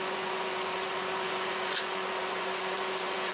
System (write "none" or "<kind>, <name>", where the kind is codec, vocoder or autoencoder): vocoder, Vocos